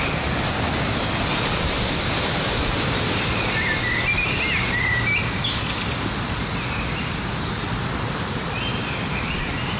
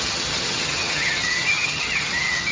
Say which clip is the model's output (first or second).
second